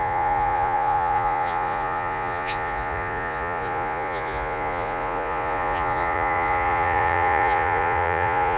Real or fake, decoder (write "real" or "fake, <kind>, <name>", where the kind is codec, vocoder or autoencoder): fake, vocoder, Vocos